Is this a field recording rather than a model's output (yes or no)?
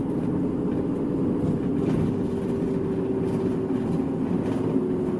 yes